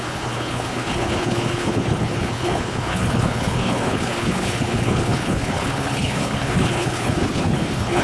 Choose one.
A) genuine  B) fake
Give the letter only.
B